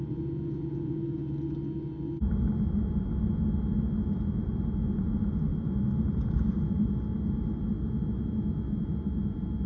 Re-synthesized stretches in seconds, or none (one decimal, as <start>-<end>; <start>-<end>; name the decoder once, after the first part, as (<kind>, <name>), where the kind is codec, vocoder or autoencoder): 0.0-1.2 (vocoder, Vocos); 5.0-5.5